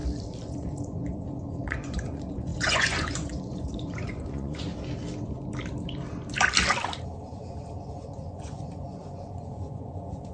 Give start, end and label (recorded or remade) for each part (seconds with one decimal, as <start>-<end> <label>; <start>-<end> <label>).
0.0-0.5 recorded; 0.5-4.7 remade; 4.7-7.9 recorded; 7.9-10.3 remade